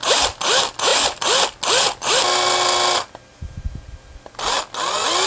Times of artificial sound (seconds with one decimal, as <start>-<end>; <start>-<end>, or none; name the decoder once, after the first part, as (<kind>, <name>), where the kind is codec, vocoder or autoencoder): none